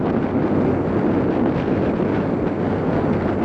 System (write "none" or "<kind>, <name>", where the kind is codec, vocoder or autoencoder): none